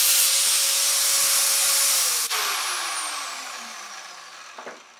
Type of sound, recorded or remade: recorded